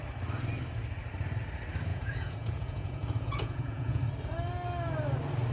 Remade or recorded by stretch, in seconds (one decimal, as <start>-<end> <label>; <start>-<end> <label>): 0.0-1.9 recorded; 1.9-4.0 remade; 4.0-5.5 recorded